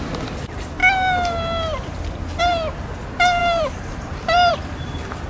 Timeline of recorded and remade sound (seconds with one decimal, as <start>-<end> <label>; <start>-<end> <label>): 0.0-3.4 recorded; 3.4-4.5 remade; 4.5-5.3 recorded